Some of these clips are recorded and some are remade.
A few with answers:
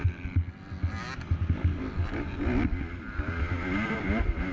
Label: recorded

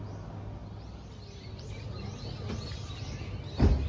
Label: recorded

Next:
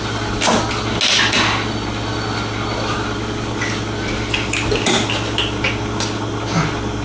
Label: recorded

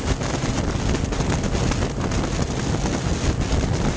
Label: recorded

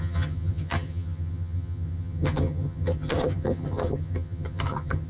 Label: remade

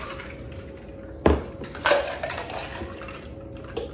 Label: recorded